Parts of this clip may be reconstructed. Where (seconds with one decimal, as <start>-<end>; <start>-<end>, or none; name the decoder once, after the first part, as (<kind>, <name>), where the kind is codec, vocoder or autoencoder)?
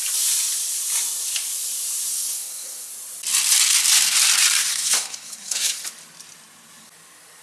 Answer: 2.1-2.9 (codec, SNAC); 4.6-5.8